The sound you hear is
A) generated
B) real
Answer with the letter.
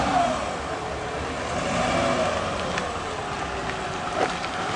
B